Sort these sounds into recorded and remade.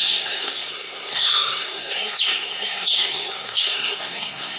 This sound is remade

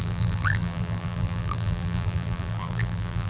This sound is remade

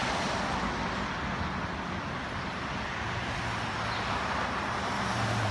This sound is recorded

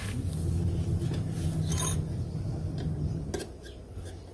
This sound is recorded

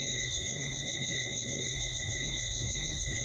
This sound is remade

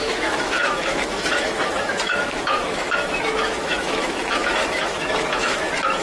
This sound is remade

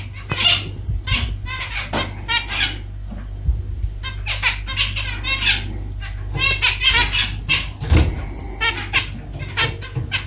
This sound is recorded